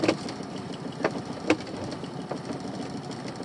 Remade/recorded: recorded